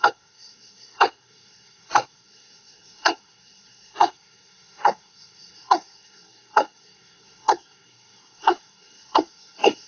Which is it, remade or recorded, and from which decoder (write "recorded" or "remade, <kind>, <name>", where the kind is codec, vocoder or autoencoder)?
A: remade, codec, SNAC